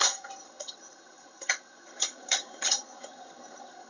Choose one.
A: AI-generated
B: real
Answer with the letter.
A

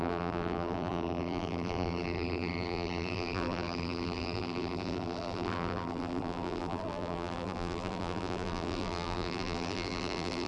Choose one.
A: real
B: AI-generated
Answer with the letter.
B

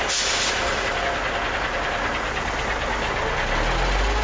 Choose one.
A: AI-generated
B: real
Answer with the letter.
B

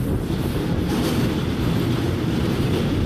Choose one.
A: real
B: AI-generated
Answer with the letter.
A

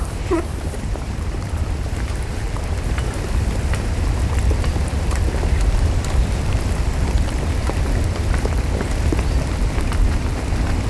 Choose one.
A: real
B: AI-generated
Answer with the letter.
B